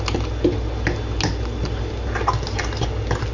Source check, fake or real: real